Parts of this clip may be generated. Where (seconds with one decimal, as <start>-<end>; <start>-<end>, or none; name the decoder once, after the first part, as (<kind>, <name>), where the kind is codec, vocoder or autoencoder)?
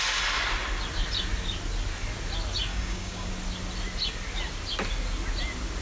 2.7-3.3 (codec, DAC)